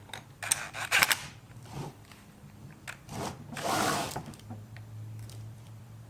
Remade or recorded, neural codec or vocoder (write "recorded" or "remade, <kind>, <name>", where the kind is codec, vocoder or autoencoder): remade, vocoder, BigVGAN v2